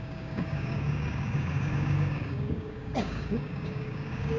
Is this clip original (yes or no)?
no